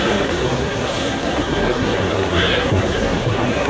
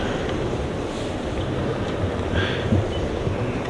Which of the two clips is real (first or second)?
second